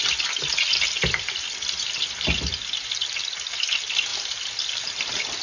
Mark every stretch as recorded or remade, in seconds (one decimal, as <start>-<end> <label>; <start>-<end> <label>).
0.0-5.4 recorded